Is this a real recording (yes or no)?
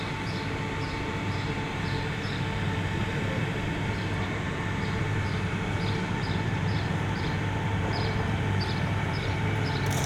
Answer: no